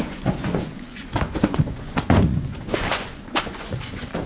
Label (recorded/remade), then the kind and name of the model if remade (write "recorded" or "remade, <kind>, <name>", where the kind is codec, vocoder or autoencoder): remade, vocoder, Vocos